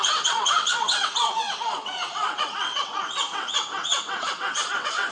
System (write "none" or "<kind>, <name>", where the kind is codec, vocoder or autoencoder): vocoder, WaveNeXt